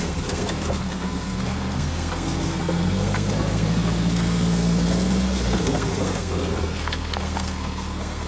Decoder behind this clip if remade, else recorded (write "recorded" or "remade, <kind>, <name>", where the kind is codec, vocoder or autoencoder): remade, codec, SNAC